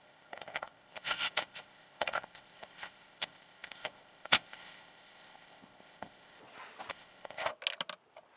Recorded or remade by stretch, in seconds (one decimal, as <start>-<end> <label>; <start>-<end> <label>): 0.0-6.4 remade; 6.4-6.9 recorded; 6.9-7.5 remade; 7.5-8.4 recorded